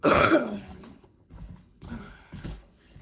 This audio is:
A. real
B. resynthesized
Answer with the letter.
B